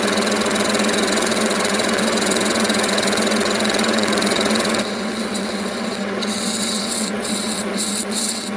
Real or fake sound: fake